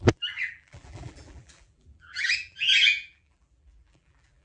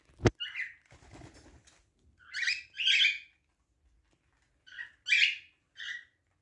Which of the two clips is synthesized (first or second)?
first